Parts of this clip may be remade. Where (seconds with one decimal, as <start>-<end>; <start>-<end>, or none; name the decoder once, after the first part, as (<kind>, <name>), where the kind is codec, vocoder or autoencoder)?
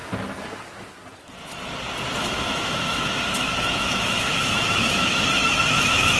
2.2-6.2 (autoencoder, DAC-VAE)